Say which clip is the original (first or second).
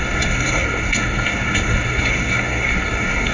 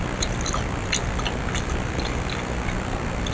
second